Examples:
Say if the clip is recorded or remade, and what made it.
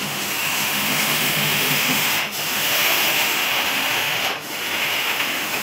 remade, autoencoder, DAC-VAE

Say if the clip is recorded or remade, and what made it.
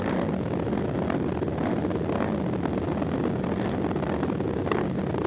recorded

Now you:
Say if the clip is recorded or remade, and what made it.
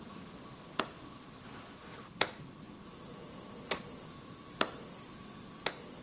recorded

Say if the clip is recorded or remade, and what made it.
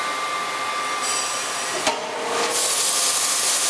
recorded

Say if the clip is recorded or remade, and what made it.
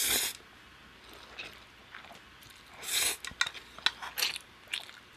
recorded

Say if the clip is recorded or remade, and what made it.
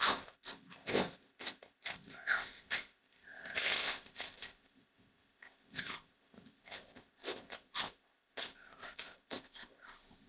remade, codec, ZipCodec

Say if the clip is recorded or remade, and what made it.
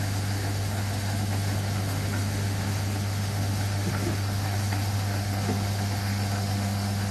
remade, autoencoder, DAC-VAE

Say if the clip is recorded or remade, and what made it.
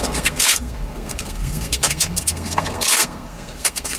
remade, codec, SNAC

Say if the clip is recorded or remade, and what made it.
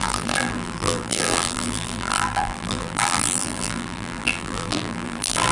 remade, vocoder, BigVGAN v2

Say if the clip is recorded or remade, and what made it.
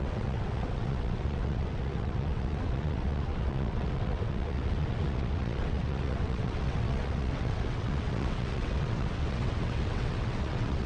remade, vocoder, WaveNeXt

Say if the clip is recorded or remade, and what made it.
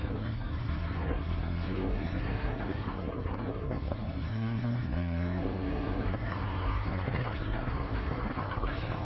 remade, codec, SNAC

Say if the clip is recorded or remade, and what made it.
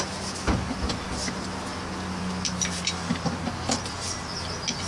recorded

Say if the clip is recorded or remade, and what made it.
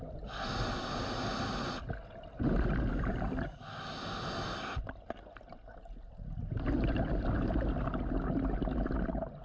recorded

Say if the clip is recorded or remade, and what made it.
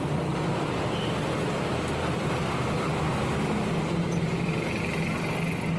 recorded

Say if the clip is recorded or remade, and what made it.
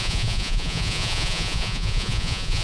remade, vocoder, Vocos